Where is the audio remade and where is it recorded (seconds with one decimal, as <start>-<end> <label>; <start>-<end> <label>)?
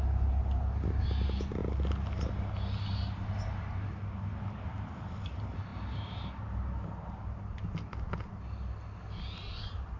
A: 0.0-10.0 recorded